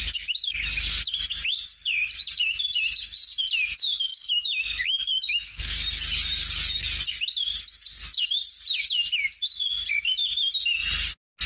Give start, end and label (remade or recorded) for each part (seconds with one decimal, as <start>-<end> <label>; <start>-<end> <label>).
0.0-4.1 recorded; 4.1-5.6 remade; 5.6-11.5 recorded